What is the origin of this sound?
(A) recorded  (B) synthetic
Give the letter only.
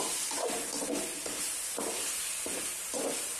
A